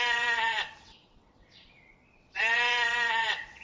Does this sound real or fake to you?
fake